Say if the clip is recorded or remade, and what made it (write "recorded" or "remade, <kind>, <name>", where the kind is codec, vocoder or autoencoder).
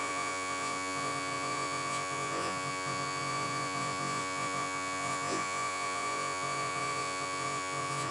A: remade, vocoder, Vocos